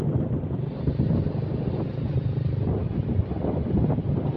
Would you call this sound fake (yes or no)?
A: no